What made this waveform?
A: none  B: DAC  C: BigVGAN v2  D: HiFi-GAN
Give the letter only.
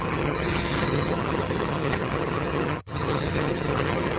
D